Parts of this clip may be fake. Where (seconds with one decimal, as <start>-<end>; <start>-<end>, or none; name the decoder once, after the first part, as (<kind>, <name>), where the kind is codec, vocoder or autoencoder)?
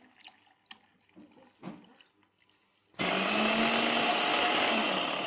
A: none